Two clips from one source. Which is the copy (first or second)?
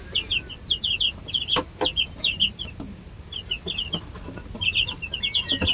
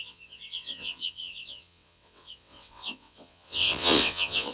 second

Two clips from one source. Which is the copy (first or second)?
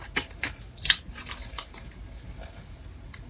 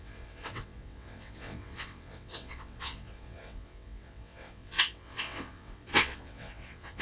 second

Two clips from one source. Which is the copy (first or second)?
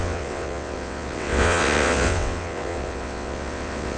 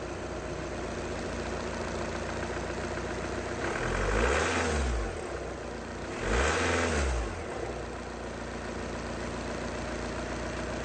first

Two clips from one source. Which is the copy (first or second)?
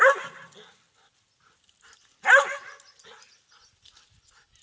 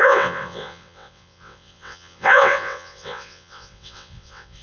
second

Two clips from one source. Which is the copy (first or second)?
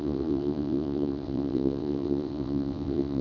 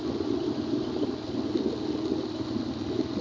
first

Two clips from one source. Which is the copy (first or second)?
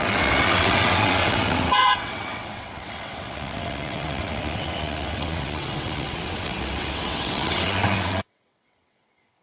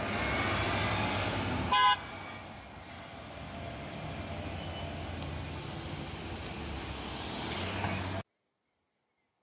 first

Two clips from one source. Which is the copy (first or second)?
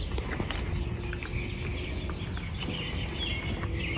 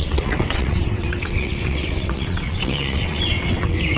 second